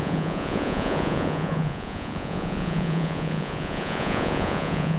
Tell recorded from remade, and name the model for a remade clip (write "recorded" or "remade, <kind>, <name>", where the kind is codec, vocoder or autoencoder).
remade, vocoder, Vocos